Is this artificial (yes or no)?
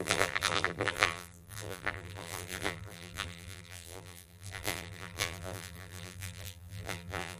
yes